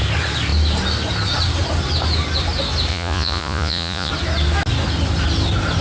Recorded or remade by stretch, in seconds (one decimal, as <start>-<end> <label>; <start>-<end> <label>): 0.0-2.9 recorded; 2.9-4.1 remade; 4.1-5.8 recorded